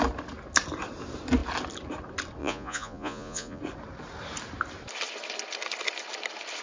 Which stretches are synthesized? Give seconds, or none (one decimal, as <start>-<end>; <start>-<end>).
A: 2.4-3.6

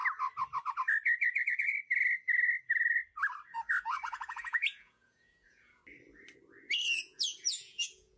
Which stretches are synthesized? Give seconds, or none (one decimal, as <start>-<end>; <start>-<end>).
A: 3.8-5.8; 7.0-8.2

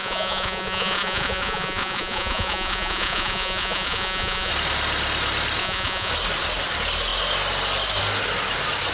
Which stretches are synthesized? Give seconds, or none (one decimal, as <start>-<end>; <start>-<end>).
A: 0.0-4.5; 5.6-6.1

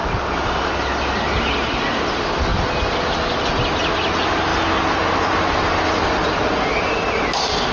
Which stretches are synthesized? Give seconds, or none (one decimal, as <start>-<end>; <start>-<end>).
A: none